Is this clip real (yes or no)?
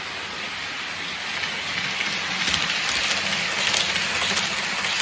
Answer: yes